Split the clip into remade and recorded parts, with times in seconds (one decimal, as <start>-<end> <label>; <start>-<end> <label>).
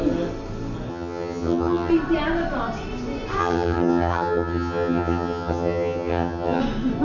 0.0-0.9 recorded; 0.9-1.9 remade; 1.9-3.4 recorded; 3.4-6.6 remade; 6.6-7.0 recorded